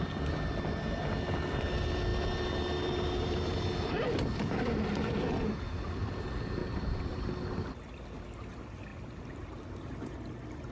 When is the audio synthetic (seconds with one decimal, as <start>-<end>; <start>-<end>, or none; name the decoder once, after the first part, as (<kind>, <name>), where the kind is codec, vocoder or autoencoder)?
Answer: 6.6-7.3 (vocoder, BigVGAN v2)